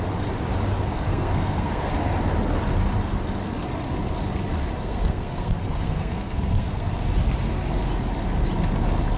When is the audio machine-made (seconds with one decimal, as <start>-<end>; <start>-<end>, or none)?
1.1-1.9; 4.8-6.9